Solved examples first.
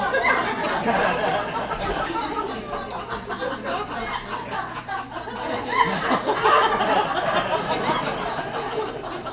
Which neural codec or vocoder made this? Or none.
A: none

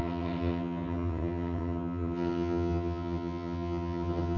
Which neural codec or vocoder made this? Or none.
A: vocoder, HiFi-GAN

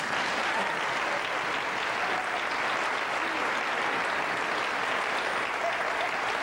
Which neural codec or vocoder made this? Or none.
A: none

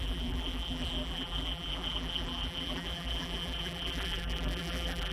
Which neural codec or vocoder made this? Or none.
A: vocoder, BigVGAN v2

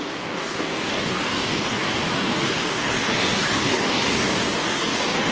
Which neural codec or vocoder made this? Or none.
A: codec, DAC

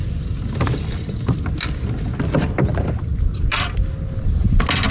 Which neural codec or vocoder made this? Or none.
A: none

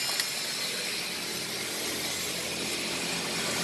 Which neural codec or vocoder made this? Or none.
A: none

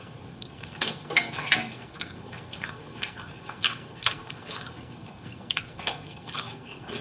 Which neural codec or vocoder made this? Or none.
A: codec, SNAC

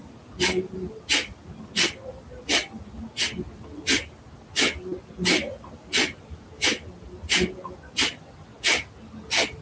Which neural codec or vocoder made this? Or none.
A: none